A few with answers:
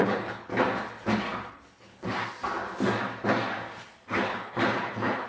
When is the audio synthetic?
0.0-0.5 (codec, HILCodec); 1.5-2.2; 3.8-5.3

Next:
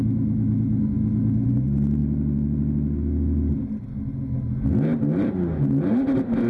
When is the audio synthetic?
none

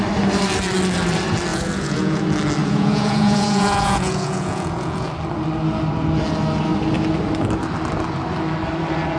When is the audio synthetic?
1.5-2.2 (vocoder, Vocos); 2.6-5.1

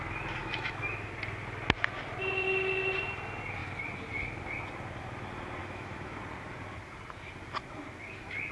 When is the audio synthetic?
0.4-1.1 (autoencoder, DAC-VAE); 5.6-6.2